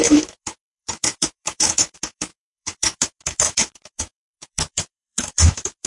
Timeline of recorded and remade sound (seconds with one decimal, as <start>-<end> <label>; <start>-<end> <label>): 0.0-5.9 remade